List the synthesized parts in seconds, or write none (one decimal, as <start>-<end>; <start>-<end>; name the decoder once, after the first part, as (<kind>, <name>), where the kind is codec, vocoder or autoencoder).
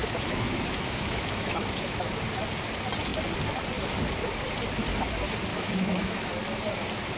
0.0-2.2 (autoencoder, DAC-VAE); 5.5-6.3